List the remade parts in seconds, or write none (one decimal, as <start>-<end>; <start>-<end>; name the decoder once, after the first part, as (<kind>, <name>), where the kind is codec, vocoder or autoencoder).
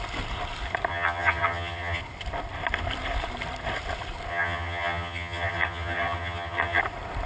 0.9-2.0 (vocoder, HiFi-GAN); 4.3-6.8